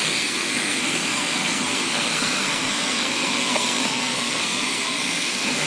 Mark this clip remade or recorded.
remade